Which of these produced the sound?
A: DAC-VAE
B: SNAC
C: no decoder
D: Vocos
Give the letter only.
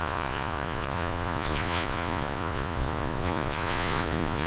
D